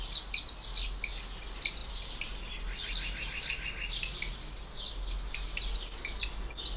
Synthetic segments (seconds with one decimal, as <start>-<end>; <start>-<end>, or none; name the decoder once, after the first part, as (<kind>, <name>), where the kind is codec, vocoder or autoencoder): none